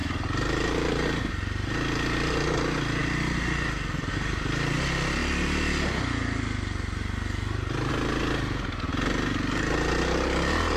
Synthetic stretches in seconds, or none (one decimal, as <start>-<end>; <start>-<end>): none